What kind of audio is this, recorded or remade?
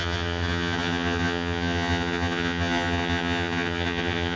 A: remade